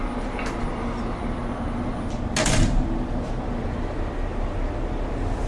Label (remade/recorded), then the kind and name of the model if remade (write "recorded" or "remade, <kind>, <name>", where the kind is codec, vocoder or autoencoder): recorded